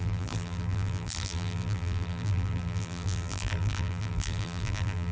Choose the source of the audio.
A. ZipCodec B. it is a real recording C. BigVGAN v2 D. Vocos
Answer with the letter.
C